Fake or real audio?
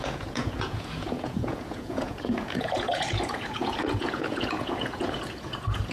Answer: fake